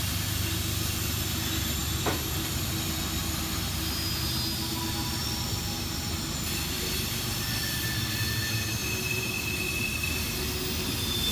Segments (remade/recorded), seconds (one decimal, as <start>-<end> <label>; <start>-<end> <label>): 0.0-11.3 recorded